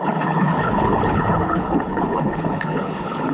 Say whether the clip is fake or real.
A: fake